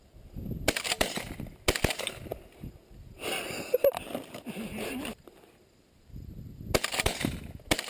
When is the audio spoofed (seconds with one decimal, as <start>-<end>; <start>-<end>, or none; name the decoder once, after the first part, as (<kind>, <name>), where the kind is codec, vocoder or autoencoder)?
none